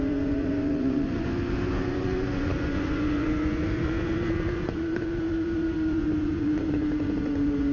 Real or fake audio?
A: fake